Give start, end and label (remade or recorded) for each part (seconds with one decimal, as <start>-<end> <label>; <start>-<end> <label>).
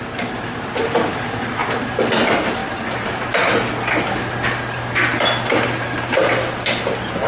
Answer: 0.0-1.6 remade; 1.6-2.1 recorded; 2.1-2.6 remade; 2.6-7.3 recorded